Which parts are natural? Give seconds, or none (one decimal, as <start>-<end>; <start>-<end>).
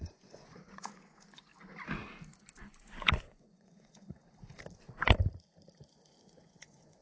1.5-2.6; 4.2-6.2